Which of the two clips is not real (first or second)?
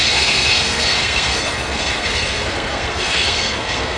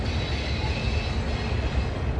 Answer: first